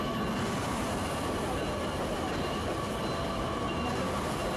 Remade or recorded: recorded